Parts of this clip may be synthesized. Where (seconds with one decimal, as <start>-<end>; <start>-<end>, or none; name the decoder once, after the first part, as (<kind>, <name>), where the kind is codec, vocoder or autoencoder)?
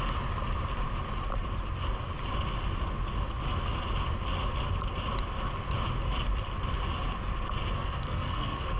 7.7-8.8 (codec, SNAC)